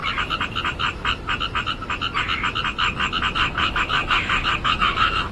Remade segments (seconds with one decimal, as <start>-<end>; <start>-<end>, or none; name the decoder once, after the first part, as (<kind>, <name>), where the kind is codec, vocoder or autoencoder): 3.4-5.3 (autoencoder, DAC-VAE)